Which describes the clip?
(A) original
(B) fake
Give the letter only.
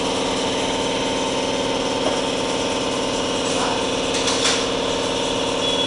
A